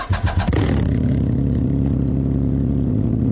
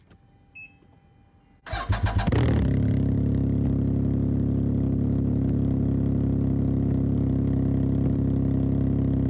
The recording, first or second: second